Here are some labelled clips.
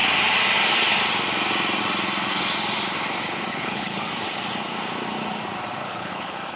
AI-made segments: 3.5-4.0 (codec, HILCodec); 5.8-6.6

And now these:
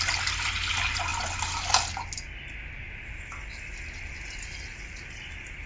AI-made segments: none

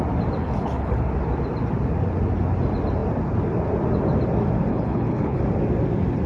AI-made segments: 0.4-1.1 (codec, HILCodec); 4.7-5.4

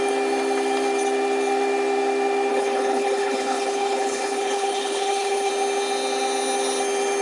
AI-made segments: 2.5-5.5 (codec, HILCodec)

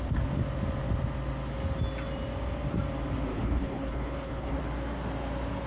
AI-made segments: 3.3-4.6 (codec, HILCodec)